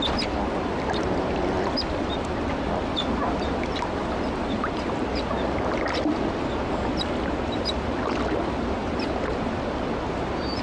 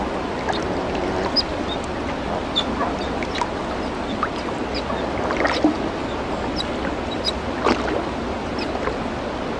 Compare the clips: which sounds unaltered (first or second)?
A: second